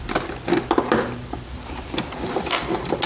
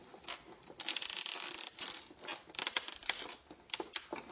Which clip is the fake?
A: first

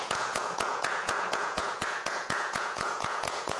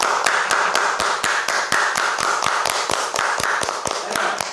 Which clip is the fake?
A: first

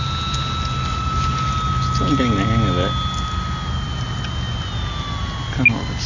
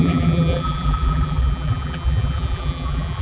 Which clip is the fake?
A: second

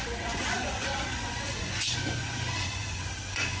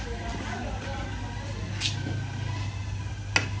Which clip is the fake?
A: first